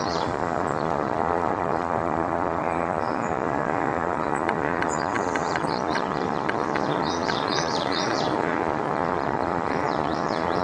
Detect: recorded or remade remade